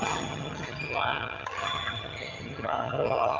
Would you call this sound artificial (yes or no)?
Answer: yes